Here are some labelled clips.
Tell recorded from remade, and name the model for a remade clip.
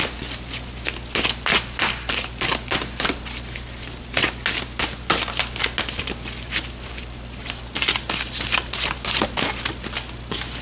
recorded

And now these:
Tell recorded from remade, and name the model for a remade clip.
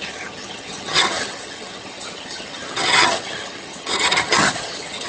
remade, vocoder, HiFi-GAN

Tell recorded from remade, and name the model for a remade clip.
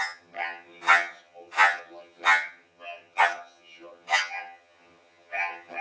remade, vocoder, HiFi-GAN